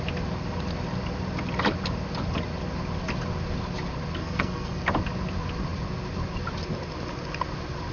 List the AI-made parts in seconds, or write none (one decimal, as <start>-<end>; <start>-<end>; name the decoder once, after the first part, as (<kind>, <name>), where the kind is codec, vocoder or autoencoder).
4.2-4.8 (codec, SNAC)